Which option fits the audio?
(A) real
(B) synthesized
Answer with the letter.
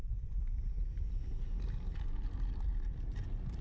A